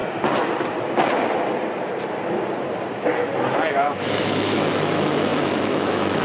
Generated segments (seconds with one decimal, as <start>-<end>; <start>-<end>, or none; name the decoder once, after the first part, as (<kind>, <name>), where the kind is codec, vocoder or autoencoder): 3.7-6.2 (autoencoder, DAC-VAE)